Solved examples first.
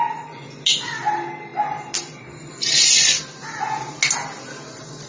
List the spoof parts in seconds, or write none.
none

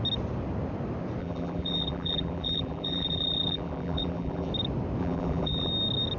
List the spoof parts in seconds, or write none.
1.2-4.5 (vocoder, BigVGAN v2); 5.0-5.7